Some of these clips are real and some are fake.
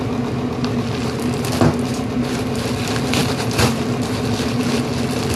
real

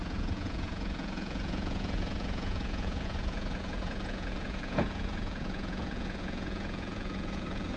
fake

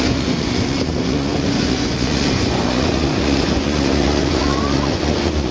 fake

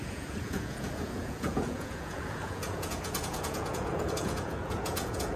fake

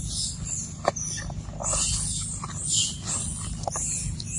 real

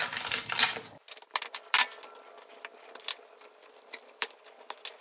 real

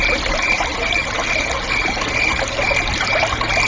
real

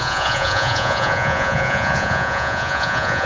fake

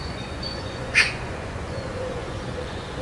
fake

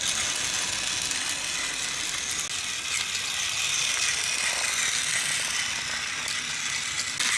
real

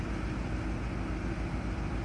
real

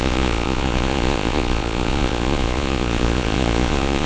fake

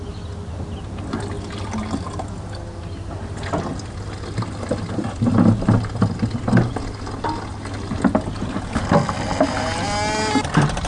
real